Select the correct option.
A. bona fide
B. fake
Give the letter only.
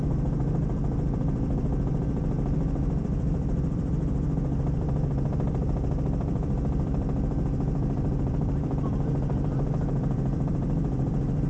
B